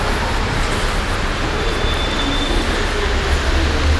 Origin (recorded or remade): recorded